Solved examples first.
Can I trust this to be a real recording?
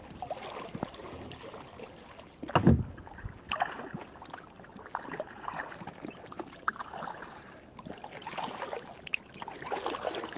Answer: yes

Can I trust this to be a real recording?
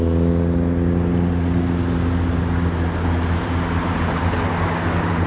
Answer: yes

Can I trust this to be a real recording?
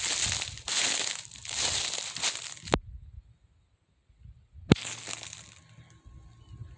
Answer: yes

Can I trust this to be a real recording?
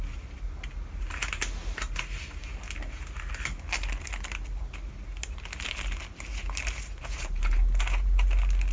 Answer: yes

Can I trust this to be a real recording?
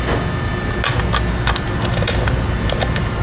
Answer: yes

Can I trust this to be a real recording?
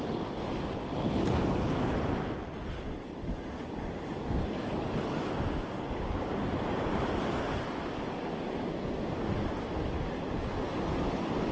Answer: yes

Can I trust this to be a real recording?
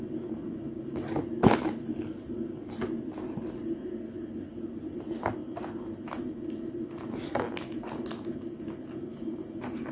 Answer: yes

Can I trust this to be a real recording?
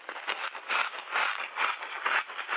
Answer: yes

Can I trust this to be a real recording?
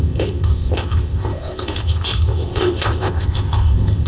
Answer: no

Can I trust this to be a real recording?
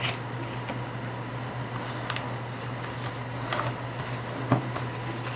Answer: yes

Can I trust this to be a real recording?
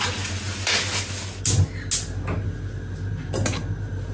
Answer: yes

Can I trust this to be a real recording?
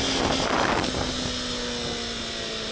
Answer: yes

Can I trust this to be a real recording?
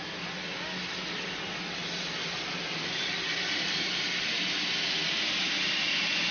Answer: yes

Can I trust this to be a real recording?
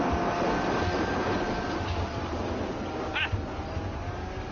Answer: yes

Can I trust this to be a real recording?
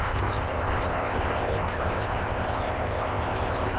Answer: no